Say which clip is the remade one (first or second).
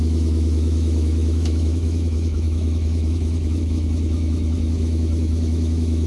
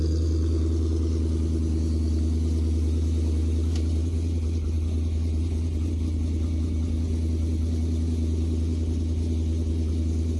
first